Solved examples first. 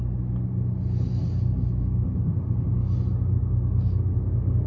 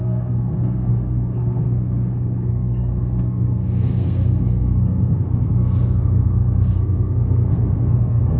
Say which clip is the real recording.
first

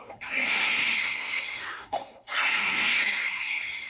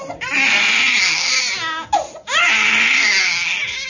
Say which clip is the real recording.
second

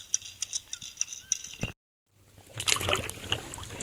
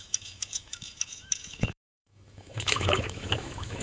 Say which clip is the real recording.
first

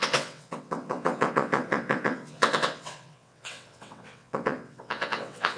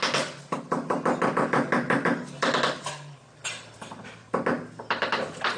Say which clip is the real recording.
second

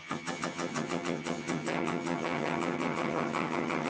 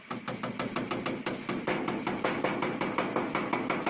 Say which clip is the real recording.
second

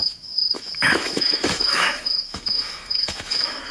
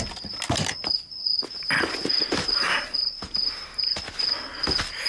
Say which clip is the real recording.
second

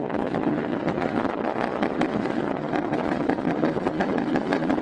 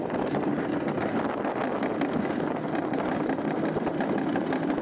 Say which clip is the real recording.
second